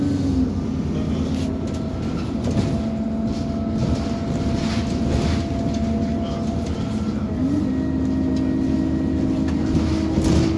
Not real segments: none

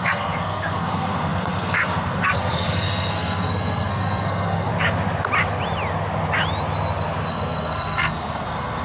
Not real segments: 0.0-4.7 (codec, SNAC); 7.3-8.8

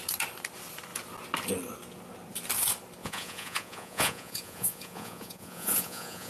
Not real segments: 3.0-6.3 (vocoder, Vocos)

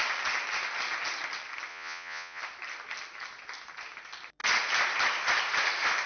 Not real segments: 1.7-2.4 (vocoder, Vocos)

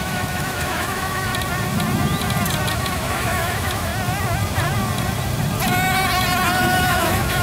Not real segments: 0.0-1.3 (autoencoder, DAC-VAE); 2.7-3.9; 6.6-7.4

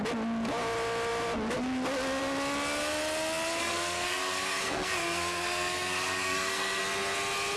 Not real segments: 3.6-6.8 (codec, SNAC)

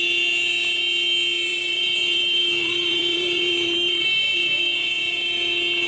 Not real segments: 1.5-4.2 (vocoder, BigVGAN v2)

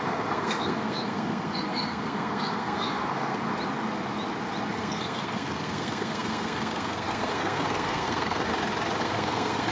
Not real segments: 0.0-3.5 (codec, SNAC); 4.7-8.5; 9.0-9.7